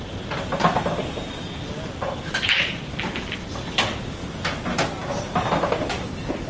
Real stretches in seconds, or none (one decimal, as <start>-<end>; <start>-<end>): 0.0-6.5